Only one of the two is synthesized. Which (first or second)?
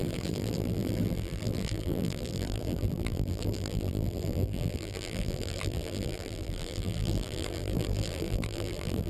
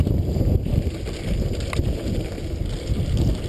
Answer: first